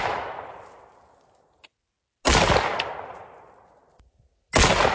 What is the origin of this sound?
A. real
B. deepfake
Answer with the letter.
A